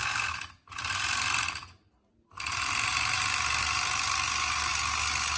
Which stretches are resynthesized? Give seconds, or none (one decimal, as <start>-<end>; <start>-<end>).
none